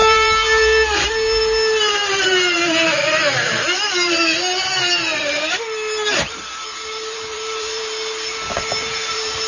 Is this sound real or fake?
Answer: fake